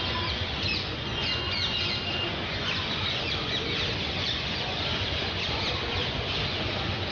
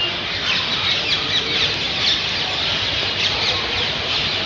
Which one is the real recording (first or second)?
second